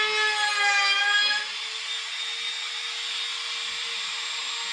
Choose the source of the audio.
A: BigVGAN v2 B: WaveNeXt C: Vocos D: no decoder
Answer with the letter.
D